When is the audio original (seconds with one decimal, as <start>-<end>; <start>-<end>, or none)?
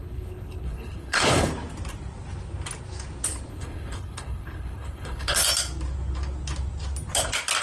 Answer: 1.5-3.5; 5.4-7.6